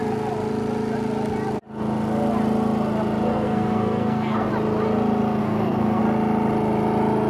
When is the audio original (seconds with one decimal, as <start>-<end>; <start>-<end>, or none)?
0.0-3.3; 4.5-5.4; 6.0-7.3

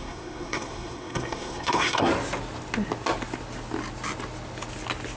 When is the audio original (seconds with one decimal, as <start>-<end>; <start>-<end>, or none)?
2.1-5.2

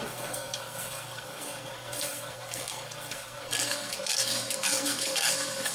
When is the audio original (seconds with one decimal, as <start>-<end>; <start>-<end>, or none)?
none

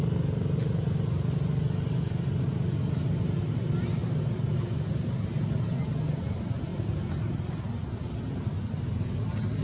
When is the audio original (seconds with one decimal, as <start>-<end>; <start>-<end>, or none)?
0.0-9.6

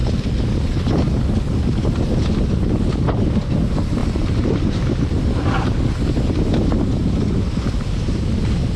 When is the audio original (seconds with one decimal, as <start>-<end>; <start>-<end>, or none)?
0.0-4.0; 6.1-7.0; 8.4-8.8

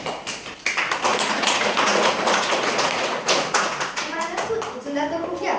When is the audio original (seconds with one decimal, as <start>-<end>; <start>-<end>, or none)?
0.0-1.1; 4.5-5.6